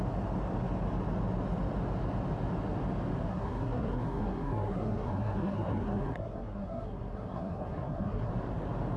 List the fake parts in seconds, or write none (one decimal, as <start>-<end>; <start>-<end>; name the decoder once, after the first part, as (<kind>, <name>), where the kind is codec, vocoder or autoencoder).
3.3-8.3 (codec, SNAC)